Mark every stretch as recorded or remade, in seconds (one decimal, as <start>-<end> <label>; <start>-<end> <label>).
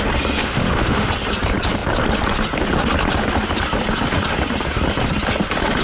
0.0-0.4 recorded; 0.4-1.1 remade; 1.1-5.8 recorded